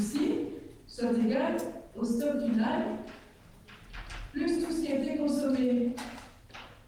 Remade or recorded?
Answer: recorded